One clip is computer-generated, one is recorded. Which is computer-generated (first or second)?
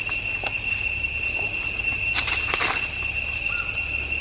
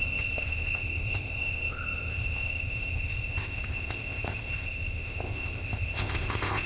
second